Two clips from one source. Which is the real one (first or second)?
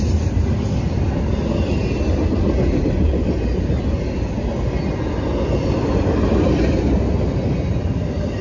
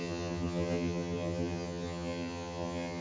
first